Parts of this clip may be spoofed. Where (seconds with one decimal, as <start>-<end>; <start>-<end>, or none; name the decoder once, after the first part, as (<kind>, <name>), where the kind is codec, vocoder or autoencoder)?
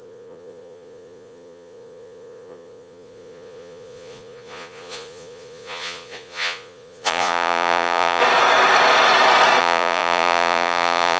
0.0-8.2 (vocoder, Vocos); 9.6-11.2